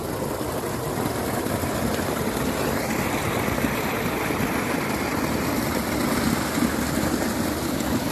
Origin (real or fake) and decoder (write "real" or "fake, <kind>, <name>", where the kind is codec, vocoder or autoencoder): real